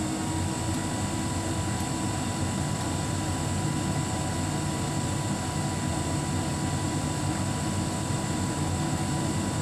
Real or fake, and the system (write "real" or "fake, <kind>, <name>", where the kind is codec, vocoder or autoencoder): real